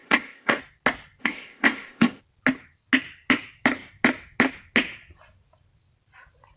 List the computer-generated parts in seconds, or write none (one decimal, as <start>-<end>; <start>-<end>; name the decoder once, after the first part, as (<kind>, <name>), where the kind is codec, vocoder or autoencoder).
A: 0.0-0.6 (codec, ZipCodec); 1.2-2.2